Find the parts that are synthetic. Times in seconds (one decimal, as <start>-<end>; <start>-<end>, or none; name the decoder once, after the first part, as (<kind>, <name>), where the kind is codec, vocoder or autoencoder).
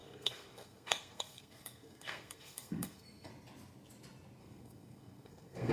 0.0-3.3 (codec, SNAC); 4.4-5.7